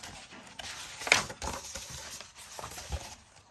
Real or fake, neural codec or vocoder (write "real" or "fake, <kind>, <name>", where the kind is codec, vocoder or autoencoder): real